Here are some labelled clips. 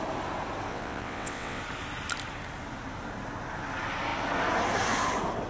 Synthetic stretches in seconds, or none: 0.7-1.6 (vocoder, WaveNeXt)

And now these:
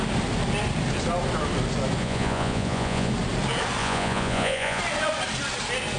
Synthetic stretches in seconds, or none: 2.0-3.1 (vocoder, Vocos); 3.8-4.8

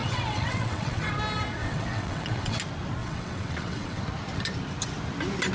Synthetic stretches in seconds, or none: 0.0-1.1 (vocoder, WaveNeXt); 1.6-2.6; 3.0-4.0